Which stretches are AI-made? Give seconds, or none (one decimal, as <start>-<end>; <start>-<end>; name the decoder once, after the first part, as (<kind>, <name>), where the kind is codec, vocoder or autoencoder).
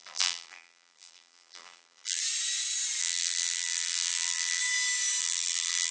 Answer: 0.0-2.2 (vocoder, BigVGAN v2); 3.0-4.6; 5.2-5.9